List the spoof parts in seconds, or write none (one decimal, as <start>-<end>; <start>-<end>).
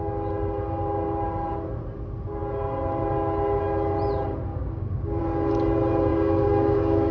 4.5-5.2; 6.1-7.1